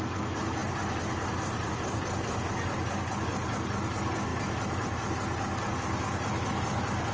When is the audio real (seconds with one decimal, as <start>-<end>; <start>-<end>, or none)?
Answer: 0.0-0.6; 1.7-4.3; 5.1-7.1